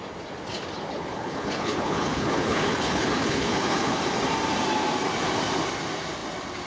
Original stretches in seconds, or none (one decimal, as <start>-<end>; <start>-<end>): 0.0-0.9; 4.0-6.7